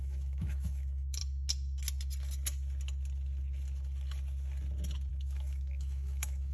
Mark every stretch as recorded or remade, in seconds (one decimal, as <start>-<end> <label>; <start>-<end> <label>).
0.0-1.2 remade; 1.2-5.1 recorded; 5.1-6.5 remade